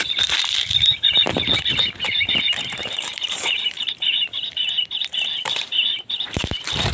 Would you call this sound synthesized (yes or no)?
yes